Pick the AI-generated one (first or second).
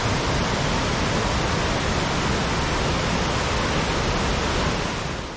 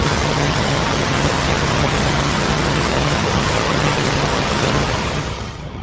second